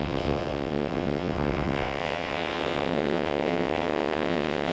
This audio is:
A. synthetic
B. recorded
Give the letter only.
A